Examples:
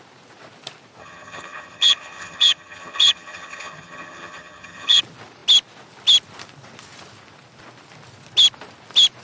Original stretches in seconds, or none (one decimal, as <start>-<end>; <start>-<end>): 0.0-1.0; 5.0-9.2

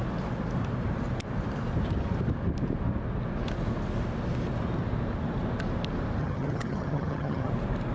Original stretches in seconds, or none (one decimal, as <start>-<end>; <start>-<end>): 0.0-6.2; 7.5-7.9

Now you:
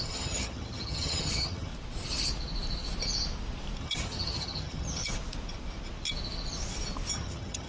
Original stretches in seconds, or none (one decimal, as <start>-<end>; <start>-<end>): 1.7-3.8; 5.0-7.1